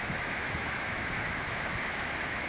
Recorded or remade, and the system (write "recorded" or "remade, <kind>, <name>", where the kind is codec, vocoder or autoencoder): remade, autoencoder, DAC-VAE